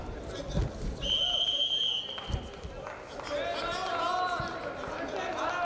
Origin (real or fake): real